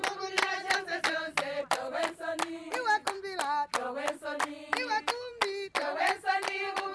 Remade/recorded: recorded